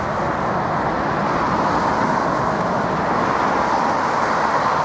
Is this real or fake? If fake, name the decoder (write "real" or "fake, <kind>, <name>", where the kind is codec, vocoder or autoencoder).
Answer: real